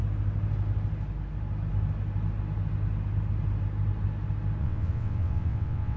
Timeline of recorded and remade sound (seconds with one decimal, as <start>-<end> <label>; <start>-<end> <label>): 0.0-4.6 recorded; 4.6-6.0 remade